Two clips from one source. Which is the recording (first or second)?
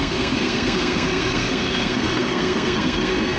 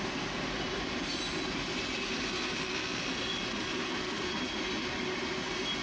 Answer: second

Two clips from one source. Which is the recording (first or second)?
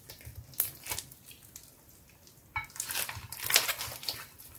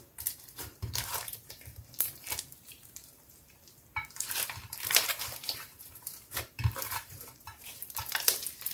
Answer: first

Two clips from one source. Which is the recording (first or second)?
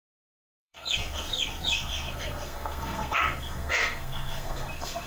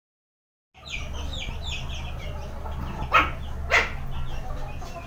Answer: second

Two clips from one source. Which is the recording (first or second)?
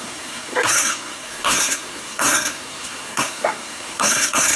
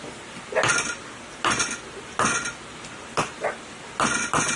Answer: second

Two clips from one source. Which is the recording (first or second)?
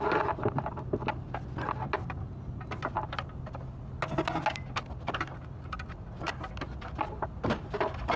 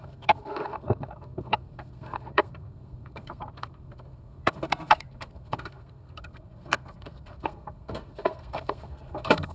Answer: first